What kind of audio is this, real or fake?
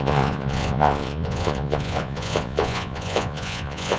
fake